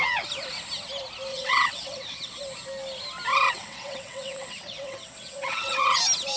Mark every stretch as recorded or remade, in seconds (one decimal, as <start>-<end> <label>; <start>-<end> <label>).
0.0-1.3 recorded; 1.3-2.4 remade; 2.4-3.3 recorded; 3.3-6.0 remade; 6.0-6.4 recorded